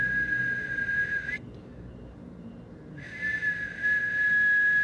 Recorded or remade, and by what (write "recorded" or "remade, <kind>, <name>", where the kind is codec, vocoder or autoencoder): recorded